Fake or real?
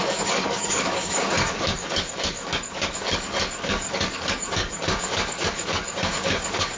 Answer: fake